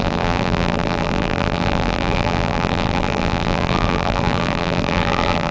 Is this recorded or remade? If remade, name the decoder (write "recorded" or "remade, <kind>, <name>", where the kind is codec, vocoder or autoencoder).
remade, vocoder, BigVGAN v2